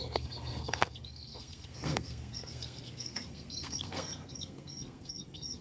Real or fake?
fake